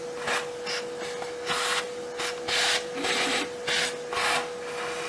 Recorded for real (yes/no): yes